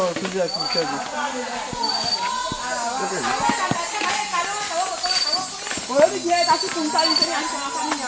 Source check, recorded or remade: recorded